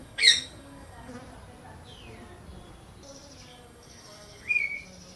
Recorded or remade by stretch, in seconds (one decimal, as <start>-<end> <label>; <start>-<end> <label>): 0.0-1.1 remade; 1.1-3.5 recorded; 3.5-4.6 remade; 4.6-5.2 recorded

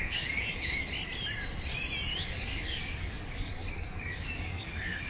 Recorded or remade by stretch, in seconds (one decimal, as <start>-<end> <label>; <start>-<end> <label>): 0.0-0.9 remade; 0.9-2.1 recorded; 2.1-5.1 remade

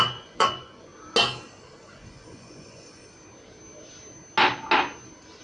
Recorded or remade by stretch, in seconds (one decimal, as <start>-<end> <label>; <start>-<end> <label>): 0.0-0.9 remade; 0.9-1.8 recorded; 1.8-3.0 remade; 3.0-5.4 recorded

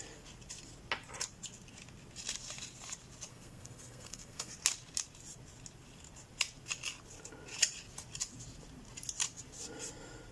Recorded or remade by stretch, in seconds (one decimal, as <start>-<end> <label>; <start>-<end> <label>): 0.0-3.3 recorded; 3.3-4.5 remade; 4.5-10.3 recorded

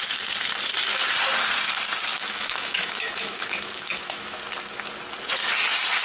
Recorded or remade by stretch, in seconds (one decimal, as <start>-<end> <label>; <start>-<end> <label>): 0.0-2.1 recorded; 2.1-4.4 remade; 4.4-6.0 recorded

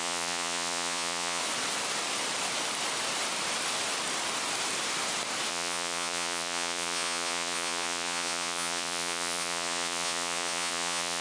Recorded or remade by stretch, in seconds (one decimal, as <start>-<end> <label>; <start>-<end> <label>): 0.0-1.4 remade; 1.4-5.5 recorded; 5.5-11.2 remade

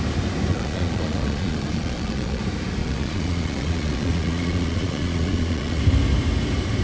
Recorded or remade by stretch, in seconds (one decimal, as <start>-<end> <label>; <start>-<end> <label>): 0.0-0.5 recorded; 0.5-2.4 remade; 2.4-2.8 recorded; 2.8-5.8 remade; 5.8-6.8 recorded

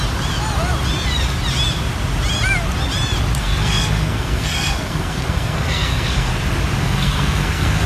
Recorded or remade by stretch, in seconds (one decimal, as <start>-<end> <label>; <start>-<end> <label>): 0.0-3.4 recorded; 3.4-6.3 remade; 6.3-6.8 recorded; 6.8-7.9 remade